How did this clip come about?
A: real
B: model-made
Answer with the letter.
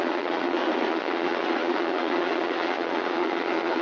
B